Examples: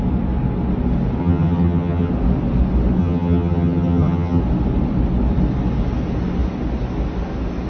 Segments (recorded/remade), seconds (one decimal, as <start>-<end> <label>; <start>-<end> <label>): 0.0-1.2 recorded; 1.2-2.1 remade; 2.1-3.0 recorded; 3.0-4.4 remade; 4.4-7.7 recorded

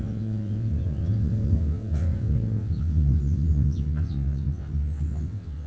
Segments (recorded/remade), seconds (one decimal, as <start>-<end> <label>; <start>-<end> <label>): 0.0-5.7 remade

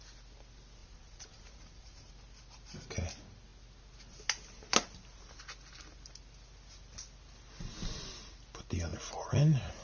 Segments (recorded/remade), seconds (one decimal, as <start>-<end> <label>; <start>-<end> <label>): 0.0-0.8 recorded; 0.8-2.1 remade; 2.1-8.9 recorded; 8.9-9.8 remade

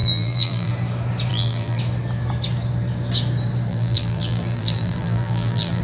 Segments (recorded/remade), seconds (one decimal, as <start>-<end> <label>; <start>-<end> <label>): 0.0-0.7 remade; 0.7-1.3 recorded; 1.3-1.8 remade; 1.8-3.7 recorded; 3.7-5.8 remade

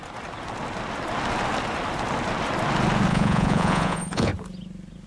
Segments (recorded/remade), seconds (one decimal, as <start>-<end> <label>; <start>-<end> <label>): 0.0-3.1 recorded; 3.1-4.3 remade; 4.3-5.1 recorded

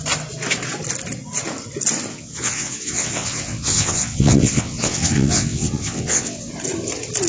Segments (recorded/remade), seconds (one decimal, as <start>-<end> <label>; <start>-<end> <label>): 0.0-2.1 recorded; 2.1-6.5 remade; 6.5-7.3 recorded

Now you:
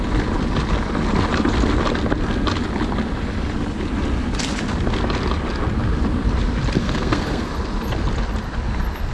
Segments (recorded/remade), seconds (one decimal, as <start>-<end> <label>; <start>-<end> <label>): 0.0-6.8 recorded; 6.8-7.5 remade; 7.5-9.1 recorded

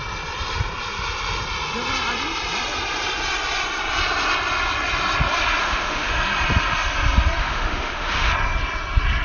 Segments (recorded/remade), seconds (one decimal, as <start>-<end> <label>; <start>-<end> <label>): 0.0-5.6 recorded; 5.6-6.1 remade; 6.1-7.4 recorded; 7.4-8.3 remade; 8.3-9.2 recorded